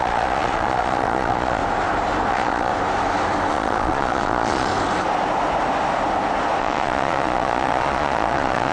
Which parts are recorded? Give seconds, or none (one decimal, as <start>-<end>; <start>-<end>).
1.6-2.3; 2.7-3.5; 4.7-6.6